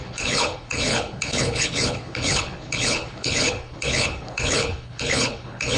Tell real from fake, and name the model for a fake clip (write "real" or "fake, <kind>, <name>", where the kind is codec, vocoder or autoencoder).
fake, codec, HILCodec